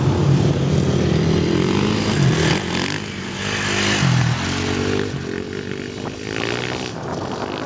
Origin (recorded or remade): recorded